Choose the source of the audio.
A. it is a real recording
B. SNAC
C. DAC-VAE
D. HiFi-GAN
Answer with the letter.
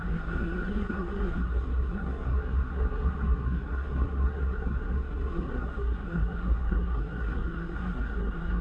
B